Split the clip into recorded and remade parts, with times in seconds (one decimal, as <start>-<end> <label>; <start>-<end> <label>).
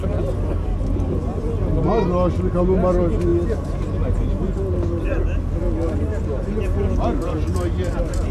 0.0-8.3 recorded